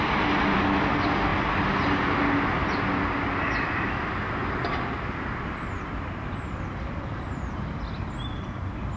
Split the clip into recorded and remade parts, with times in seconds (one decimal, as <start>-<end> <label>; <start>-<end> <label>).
0.0-9.0 recorded